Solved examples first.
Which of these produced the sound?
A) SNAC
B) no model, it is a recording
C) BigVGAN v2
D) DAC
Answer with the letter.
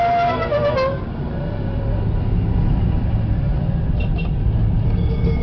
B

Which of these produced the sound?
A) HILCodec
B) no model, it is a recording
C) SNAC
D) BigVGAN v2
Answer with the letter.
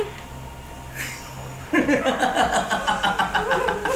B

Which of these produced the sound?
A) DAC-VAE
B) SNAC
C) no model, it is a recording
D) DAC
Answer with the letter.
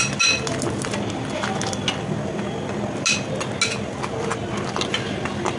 C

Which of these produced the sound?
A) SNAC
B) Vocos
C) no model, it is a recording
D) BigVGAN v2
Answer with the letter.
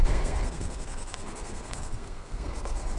A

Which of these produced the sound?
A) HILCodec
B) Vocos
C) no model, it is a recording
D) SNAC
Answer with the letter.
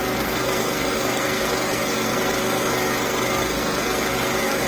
D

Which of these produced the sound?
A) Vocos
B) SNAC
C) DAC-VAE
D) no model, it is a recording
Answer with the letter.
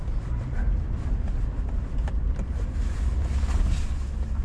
D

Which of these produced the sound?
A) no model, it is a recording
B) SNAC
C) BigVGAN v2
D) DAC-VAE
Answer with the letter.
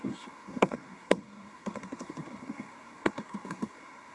B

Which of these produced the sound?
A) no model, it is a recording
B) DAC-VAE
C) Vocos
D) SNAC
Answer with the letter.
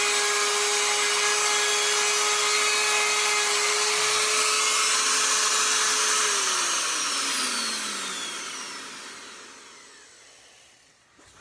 A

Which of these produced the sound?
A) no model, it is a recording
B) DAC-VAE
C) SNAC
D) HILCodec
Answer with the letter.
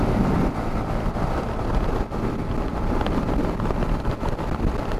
A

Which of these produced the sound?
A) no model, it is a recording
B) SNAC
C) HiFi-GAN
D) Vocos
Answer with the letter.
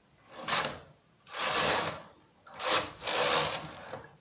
A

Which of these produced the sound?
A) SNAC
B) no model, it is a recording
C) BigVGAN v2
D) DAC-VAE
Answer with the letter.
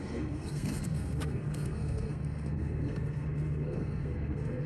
A